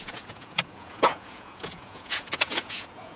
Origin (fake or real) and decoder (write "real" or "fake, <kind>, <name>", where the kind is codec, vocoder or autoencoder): fake, vocoder, Vocos